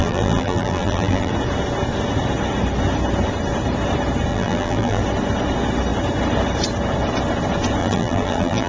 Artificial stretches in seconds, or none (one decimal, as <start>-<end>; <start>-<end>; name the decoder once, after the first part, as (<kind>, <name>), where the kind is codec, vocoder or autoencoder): 0.0-1.3 (vocoder, BigVGAN v2); 4.3-5.0; 7.8-8.7